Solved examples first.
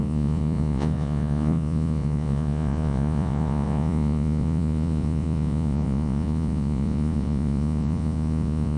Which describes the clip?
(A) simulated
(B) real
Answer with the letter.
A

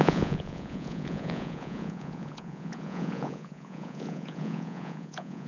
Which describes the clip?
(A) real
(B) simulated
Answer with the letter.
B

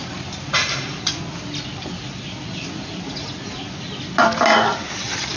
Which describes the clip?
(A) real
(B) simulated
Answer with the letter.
A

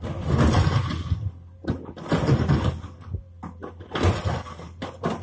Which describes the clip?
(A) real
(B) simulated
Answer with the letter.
A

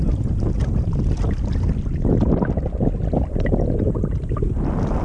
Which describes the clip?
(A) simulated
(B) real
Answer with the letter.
B